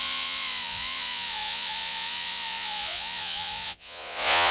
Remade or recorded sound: remade